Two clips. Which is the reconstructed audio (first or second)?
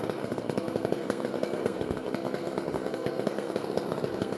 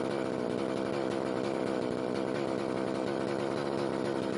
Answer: first